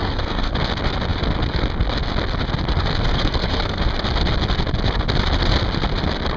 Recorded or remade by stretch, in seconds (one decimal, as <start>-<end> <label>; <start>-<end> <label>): 0.0-0.5 remade; 0.5-3.1 recorded; 3.1-3.8 remade; 3.8-6.4 recorded